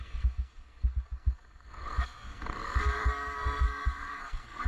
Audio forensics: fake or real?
fake